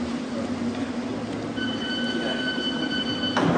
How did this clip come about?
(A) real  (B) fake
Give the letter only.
A